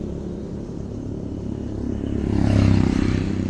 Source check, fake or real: real